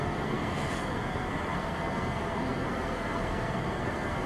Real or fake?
fake